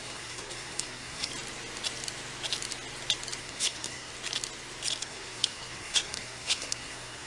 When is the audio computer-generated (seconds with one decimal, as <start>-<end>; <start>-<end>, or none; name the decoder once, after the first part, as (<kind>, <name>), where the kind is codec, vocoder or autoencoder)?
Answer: 0.0-1.3 (codec, SNAC); 3.4-4.1; 5.0-7.3